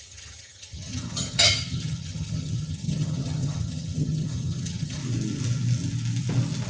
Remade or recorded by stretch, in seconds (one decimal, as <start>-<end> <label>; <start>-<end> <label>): 0.0-5.0 remade; 5.0-6.7 recorded